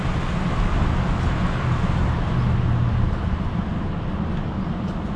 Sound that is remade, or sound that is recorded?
recorded